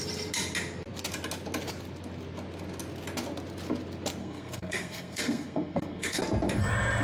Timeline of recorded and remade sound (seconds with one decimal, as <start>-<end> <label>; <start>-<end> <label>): 0.0-4.2 recorded; 4.2-6.2 remade; 6.2-7.0 recorded